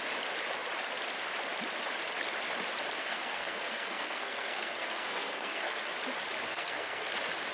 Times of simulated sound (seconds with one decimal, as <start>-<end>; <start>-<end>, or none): 3.0-5.9; 6.5-7.1